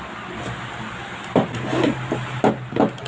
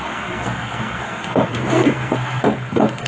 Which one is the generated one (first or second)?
second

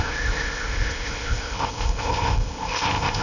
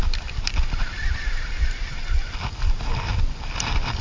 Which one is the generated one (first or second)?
first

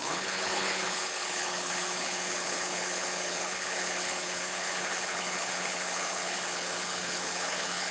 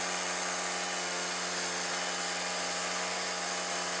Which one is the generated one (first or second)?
first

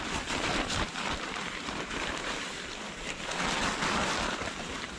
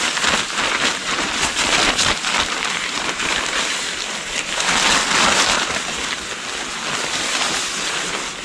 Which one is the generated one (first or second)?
first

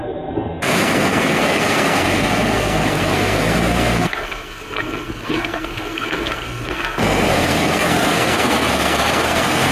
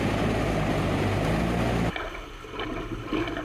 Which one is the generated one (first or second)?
first